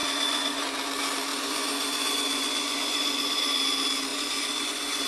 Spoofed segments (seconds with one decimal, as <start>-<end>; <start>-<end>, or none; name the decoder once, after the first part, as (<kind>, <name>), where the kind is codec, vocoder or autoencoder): 0.0-0.6 (vocoder, Vocos); 1.3-3.6; 4.1-5.1